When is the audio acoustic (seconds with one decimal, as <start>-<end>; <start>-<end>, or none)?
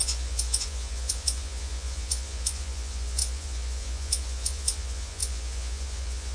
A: none